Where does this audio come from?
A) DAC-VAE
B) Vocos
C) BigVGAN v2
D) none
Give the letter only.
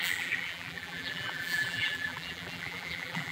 C